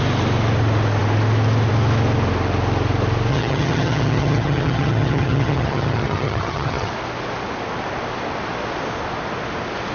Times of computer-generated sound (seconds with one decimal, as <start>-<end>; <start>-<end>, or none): 3.3-6.9